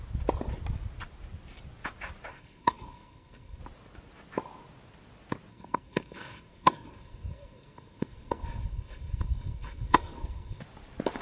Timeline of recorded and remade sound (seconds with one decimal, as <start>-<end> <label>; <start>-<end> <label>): 0.0-2.3 recorded; 2.3-3.6 remade; 3.6-5.5 recorded; 5.5-10.6 remade; 10.6-11.2 recorded

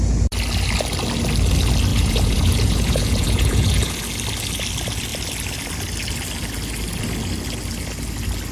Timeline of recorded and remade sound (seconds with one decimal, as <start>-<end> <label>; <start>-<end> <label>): 0.0-1.9 recorded; 1.9-4.0 remade; 4.0-8.5 recorded

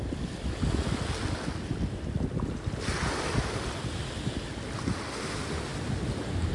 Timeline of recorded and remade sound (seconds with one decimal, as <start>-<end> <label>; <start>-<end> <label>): 0.0-6.5 recorded